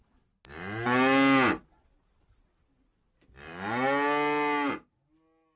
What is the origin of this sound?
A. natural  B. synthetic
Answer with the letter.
A